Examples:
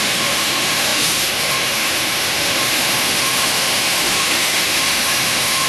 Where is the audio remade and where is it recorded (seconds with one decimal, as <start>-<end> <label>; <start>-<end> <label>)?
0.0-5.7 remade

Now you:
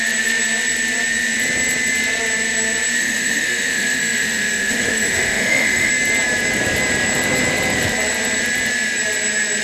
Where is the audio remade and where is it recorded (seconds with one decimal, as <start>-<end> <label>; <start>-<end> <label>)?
0.0-3.0 recorded; 3.0-5.9 remade; 5.9-9.6 recorded

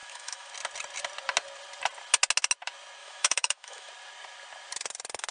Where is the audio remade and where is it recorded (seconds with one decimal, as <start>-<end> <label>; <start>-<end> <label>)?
0.0-0.5 remade; 0.5-3.0 recorded; 3.0-3.9 remade; 3.9-5.3 recorded

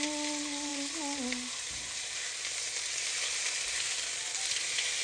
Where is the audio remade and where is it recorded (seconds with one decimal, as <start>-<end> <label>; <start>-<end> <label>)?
0.0-5.0 recorded